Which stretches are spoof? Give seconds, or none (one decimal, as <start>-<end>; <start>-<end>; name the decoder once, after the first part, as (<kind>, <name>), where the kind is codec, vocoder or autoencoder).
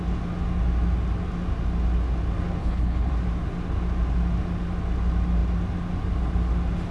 2.6-3.1 (codec, HILCodec)